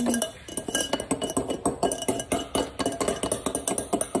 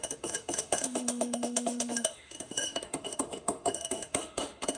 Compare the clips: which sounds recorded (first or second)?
first